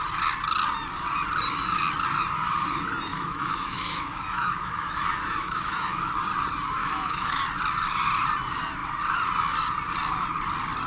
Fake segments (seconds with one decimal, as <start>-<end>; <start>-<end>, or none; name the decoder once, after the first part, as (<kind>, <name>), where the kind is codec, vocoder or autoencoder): 3.1-6.1 (autoencoder, DAC-VAE); 6.8-7.4